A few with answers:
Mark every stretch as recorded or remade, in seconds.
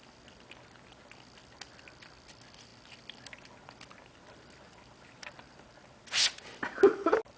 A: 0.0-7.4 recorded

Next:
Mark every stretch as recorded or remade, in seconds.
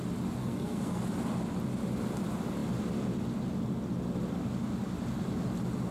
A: 0.0-0.4 recorded; 0.4-1.0 remade; 1.0-5.9 recorded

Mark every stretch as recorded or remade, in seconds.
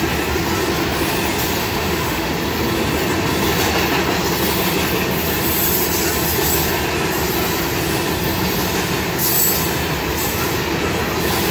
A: 0.0-1.6 recorded; 1.6-2.3 remade; 2.3-11.5 recorded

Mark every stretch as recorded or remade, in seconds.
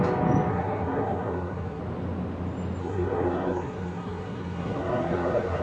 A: 0.0-0.5 recorded; 0.5-1.8 remade; 1.8-2.8 recorded; 2.8-5.6 remade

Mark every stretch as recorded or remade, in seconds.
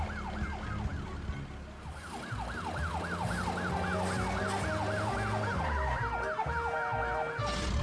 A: 0.0-7.8 recorded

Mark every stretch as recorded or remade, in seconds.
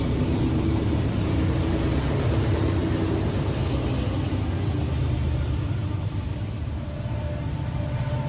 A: 0.0-2.8 remade; 2.8-5.0 recorded; 5.0-8.3 remade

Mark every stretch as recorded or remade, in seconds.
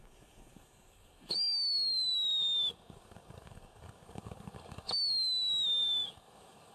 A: 0.0-2.1 remade; 2.1-2.7 recorded; 2.7-6.7 remade